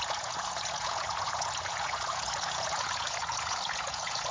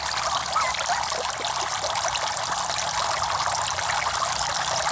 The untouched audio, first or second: second